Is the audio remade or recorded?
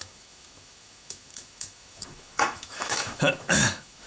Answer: remade